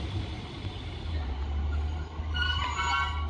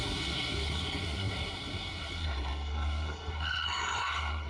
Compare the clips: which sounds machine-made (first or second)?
second